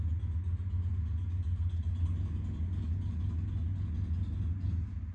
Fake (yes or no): no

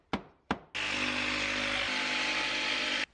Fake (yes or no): no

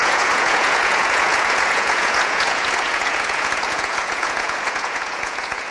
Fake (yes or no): yes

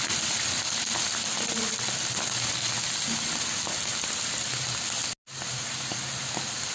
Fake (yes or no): no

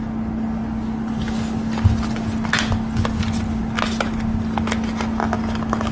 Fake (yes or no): no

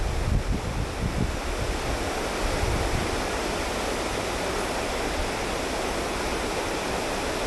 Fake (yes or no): no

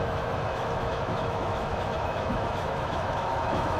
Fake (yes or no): yes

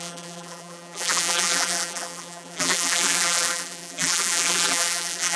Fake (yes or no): yes